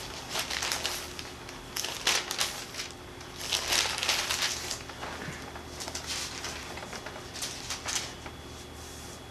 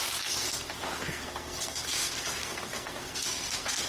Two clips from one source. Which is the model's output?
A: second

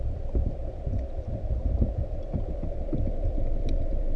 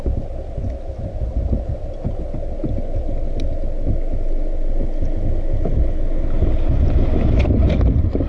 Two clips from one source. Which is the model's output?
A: first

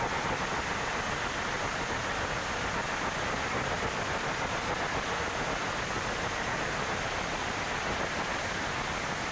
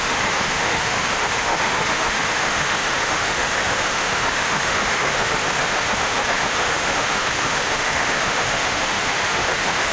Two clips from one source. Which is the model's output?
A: second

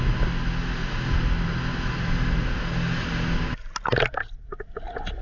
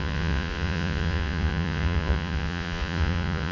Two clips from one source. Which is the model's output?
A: second